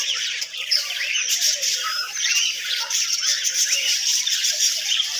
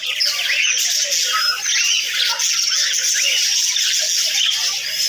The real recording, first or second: second